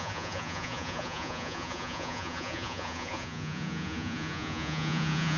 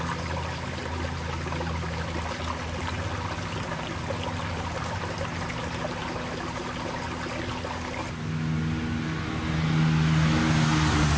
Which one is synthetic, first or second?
first